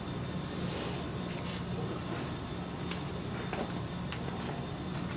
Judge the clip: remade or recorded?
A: recorded